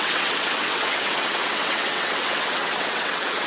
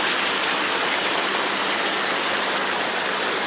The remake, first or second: first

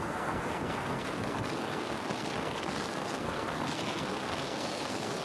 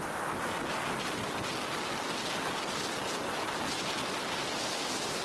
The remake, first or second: first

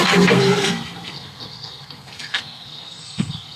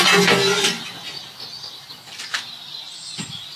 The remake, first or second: first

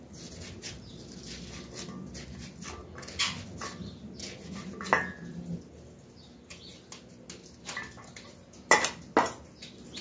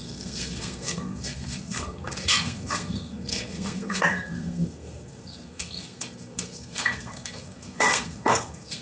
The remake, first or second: second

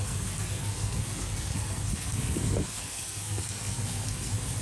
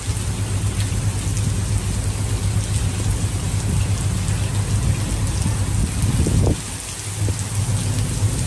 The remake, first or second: first